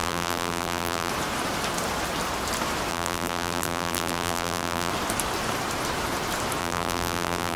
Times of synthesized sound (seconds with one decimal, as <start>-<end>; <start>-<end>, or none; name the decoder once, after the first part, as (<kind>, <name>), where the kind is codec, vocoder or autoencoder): 0.0-1.1 (vocoder, BigVGAN v2); 2.9-4.9; 6.6-7.6